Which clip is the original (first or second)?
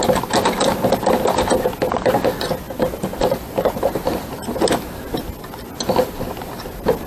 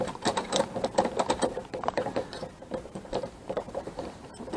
first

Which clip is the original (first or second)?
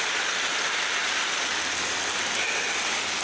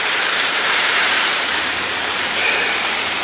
first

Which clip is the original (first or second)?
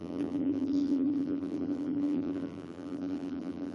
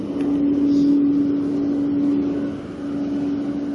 second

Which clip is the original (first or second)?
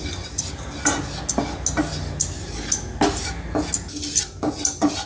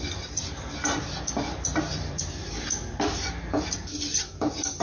first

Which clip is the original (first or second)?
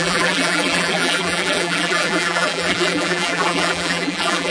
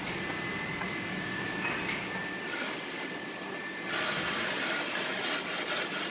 second